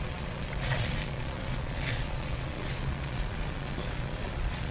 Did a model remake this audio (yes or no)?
yes